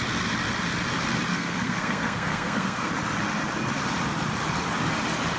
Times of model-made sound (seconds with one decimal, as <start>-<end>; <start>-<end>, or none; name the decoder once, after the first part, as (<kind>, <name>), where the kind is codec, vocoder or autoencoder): 1.3-2.9 (codec, SNAC)